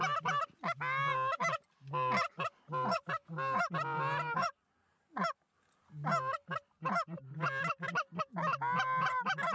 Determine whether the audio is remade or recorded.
recorded